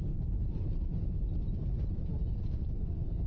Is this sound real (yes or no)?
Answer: yes